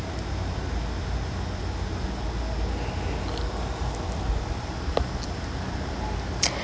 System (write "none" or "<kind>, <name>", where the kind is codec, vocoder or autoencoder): none